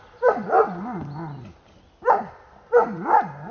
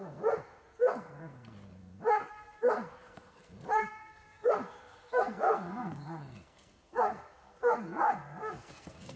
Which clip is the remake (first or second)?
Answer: second